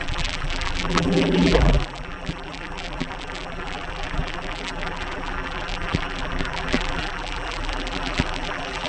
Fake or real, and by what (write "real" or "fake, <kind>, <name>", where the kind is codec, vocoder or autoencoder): fake, vocoder, BigVGAN v2